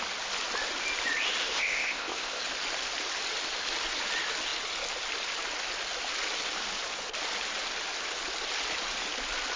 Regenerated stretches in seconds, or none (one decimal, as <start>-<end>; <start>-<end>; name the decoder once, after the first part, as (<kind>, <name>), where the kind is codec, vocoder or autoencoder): 1.4-2.4 (codec, ZipCodec)